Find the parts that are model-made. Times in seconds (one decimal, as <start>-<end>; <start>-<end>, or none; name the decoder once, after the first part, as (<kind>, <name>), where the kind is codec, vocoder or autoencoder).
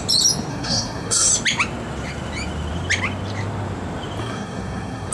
0.5-1.3 (codec, SNAC); 4.2-5.1